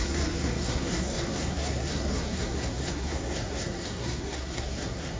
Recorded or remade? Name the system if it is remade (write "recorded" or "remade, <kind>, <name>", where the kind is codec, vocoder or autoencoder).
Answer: remade, codec, SNAC